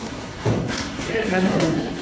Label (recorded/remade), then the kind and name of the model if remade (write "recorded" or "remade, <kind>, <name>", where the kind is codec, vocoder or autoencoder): remade, codec, SNAC